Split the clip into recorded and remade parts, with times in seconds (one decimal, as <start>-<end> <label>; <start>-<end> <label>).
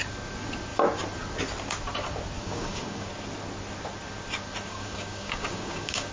0.0-2.4 recorded; 2.4-3.1 remade; 3.1-4.7 recorded; 4.7-6.1 remade